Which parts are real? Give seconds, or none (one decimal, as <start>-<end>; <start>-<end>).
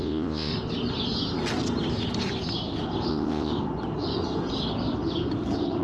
0.5-3.1; 3.5-5.8